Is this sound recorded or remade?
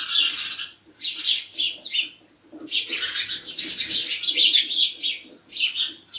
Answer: recorded